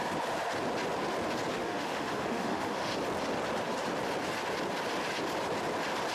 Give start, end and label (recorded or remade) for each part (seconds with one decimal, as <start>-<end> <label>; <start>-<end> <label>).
0.0-1.5 recorded; 1.5-2.9 remade; 2.9-6.1 recorded